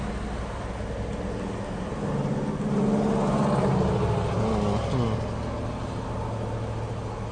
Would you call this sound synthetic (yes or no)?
no